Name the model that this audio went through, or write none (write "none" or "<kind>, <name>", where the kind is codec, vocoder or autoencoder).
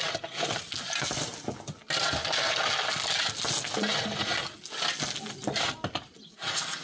none